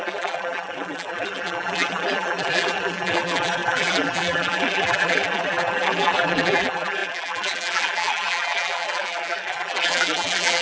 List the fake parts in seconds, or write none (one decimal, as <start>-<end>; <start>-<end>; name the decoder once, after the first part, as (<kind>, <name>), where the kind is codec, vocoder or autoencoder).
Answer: 0.0-10.6 (vocoder, BigVGAN v2)